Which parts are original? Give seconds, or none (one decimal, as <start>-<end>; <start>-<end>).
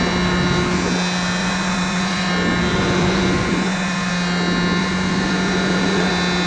0.0-1.4; 2.3-2.7; 4.1-4.8; 6.1-6.5